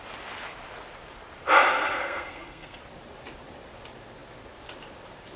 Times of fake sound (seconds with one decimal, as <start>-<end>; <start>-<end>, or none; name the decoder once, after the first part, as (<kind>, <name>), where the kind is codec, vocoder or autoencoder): 1.7-2.8 (codec, SNAC)